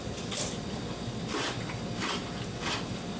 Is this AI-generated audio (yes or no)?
no